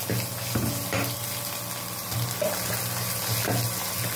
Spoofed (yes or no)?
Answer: no